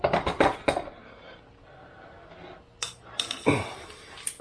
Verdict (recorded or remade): recorded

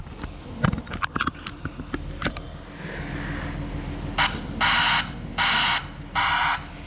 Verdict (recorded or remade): recorded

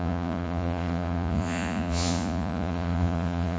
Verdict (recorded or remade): remade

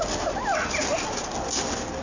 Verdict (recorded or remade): recorded